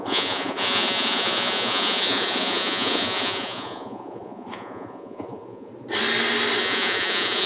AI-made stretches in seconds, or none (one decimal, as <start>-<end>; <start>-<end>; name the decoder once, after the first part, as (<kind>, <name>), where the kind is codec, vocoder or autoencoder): 0.0-5.7 (vocoder, Vocos); 6.6-7.5